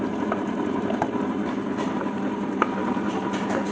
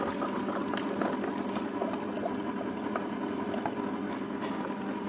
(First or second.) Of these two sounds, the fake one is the first